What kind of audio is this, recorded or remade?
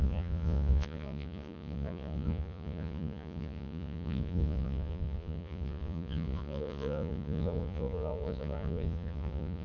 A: remade